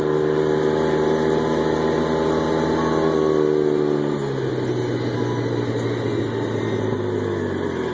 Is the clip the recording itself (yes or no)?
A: yes